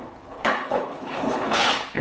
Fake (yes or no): yes